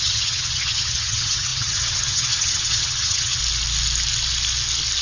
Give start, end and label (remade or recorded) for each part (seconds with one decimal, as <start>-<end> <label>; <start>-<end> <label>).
0.0-3.4 remade; 3.4-5.0 recorded